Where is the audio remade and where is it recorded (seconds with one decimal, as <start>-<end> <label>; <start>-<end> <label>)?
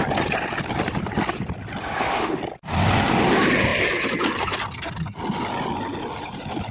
0.0-1.8 recorded; 1.8-2.4 remade; 2.4-6.7 recorded